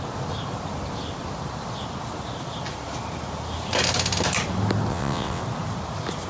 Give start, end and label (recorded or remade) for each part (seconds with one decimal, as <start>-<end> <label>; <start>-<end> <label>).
0.0-4.9 recorded; 4.9-5.4 remade; 5.4-6.3 recorded